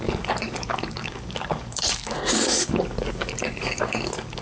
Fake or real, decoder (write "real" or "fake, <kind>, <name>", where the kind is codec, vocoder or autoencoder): fake, codec, DAC